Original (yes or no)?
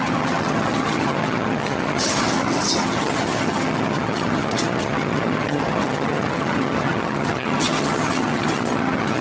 no